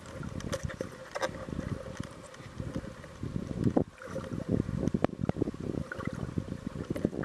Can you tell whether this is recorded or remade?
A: recorded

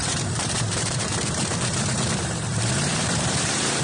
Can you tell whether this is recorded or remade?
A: remade